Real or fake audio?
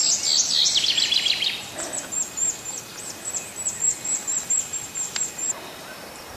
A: real